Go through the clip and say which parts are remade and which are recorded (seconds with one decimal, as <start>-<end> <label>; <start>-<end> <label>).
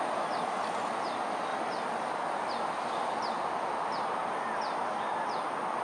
0.0-1.5 recorded; 1.5-2.5 remade; 2.5-4.2 recorded; 4.2-4.9 remade; 4.9-5.8 recorded